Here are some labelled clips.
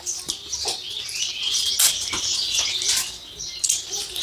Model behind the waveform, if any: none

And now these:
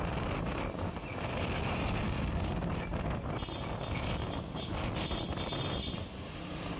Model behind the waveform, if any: none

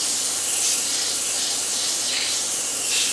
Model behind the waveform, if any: none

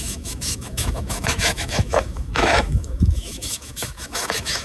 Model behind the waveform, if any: autoencoder, DAC-VAE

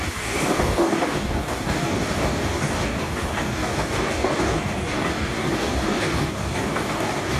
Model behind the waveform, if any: codec, DAC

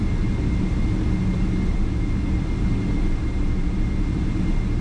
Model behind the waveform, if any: none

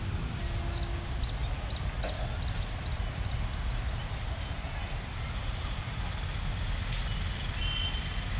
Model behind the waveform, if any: none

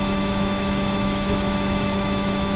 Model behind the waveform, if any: autoencoder, DAC-VAE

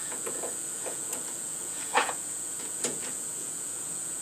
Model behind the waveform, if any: vocoder, Vocos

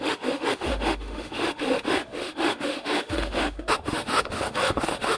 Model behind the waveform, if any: autoencoder, DAC-VAE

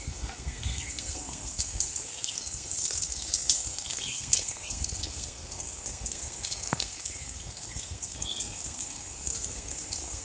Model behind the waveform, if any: codec, SNAC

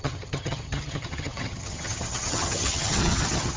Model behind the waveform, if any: vocoder, HiFi-GAN